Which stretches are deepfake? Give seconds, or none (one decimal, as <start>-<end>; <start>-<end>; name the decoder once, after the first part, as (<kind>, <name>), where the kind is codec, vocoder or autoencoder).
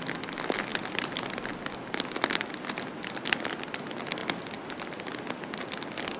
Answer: none